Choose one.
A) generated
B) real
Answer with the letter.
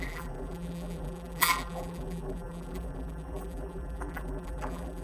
A